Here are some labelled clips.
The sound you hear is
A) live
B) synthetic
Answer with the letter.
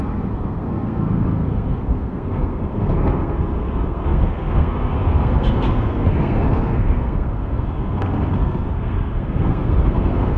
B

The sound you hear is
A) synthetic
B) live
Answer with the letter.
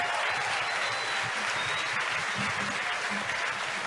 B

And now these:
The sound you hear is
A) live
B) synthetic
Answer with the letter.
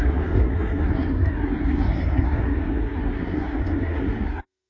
B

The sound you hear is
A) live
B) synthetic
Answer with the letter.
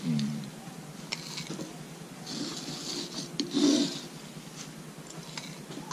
A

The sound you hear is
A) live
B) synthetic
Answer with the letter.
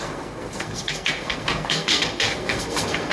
B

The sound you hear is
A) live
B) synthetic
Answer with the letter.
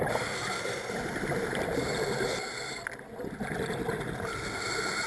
A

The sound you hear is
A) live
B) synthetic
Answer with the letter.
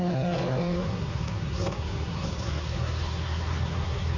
B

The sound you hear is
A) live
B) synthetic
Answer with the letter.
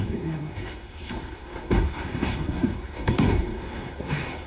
B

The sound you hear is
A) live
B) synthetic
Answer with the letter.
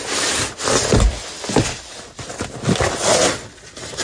A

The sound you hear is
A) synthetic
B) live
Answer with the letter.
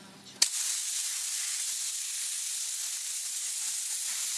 B